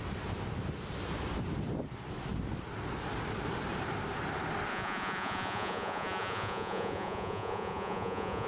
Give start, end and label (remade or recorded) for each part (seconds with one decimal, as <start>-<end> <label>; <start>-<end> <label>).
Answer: 0.0-4.7 recorded; 4.7-8.5 remade